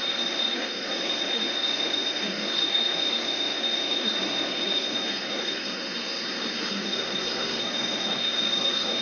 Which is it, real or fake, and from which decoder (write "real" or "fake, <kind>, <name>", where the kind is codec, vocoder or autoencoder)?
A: fake, codec, SNAC